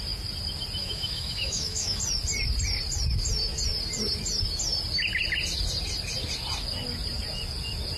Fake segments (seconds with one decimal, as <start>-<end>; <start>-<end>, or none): 0.8-2.0